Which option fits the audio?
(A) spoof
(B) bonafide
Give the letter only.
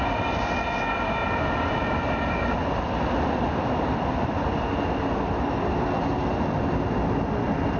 B